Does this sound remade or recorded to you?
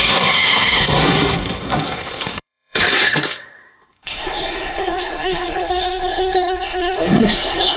remade